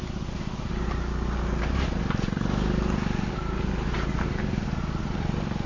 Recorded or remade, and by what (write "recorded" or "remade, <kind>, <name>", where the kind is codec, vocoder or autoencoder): recorded